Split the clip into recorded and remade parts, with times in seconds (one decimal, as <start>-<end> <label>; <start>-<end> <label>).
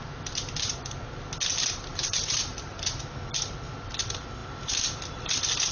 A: 0.0-1.9 recorded; 1.9-3.0 remade; 3.0-5.7 recorded